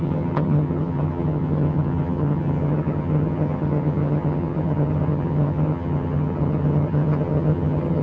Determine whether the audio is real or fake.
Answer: fake